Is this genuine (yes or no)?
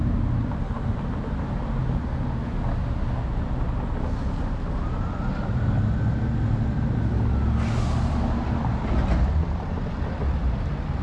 yes